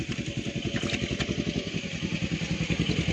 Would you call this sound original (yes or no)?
yes